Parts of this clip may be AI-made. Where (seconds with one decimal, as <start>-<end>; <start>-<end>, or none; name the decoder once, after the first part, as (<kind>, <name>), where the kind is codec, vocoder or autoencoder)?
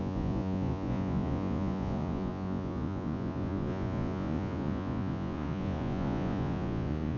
0.0-7.2 (vocoder, Vocos)